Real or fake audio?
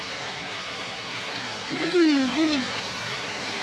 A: fake